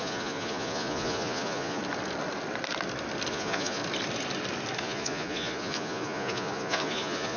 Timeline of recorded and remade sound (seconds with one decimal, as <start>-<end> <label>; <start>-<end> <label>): 0.0-1.8 remade; 1.8-3.3 recorded; 3.3-3.8 remade; 3.8-4.8 recorded; 4.8-7.4 remade